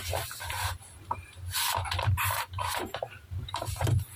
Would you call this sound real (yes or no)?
no